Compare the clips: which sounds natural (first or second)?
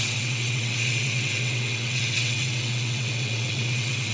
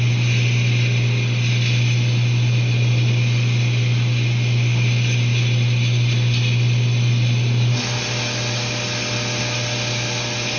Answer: second